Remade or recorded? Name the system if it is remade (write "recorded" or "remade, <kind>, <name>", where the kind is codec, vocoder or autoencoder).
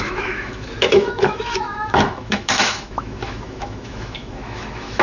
remade, autoencoder, DAC-VAE